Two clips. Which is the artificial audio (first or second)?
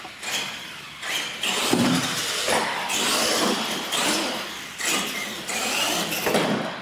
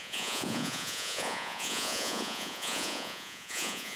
second